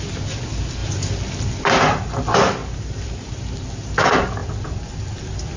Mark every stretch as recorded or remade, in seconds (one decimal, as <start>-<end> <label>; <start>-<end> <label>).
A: 0.0-2.6 recorded; 2.6-3.6 remade; 3.6-5.6 recorded